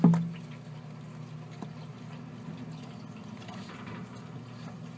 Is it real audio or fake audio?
real